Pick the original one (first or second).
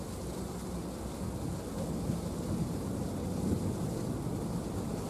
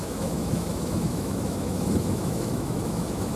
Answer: first